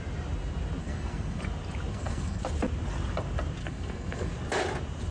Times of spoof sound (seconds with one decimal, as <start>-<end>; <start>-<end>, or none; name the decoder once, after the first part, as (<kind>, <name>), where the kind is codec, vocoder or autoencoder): 0.8-1.4 (codec, SNAC); 1.9-2.4; 3.6-4.3